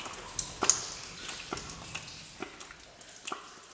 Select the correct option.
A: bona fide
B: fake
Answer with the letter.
A